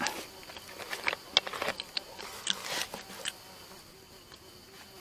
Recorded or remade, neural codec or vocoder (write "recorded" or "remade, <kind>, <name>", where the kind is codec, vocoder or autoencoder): recorded